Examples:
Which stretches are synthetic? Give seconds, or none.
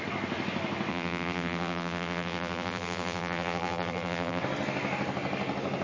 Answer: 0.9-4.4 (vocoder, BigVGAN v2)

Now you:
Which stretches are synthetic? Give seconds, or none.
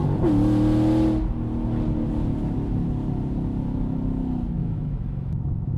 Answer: 4.6-5.8 (autoencoder, DAC-VAE)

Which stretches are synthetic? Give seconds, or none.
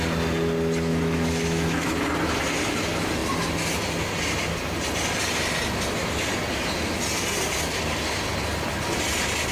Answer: 0.9-1.9 (autoencoder, DAC-VAE)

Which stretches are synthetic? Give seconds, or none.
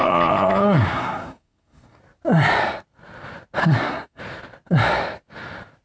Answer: 0.6-2.0 (codec, SNAC); 3.6-4.2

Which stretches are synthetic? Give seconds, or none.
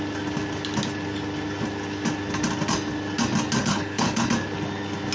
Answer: 3.6-4.3 (codec, HILCodec)